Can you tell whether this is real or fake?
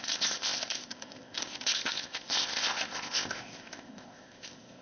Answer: fake